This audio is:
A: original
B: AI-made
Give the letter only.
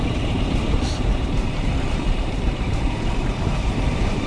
B